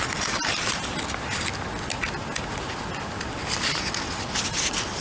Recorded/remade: recorded